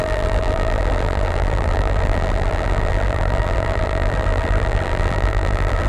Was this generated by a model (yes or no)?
yes